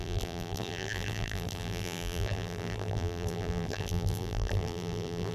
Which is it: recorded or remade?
remade